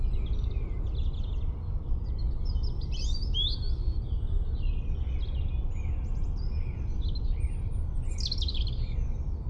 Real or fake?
real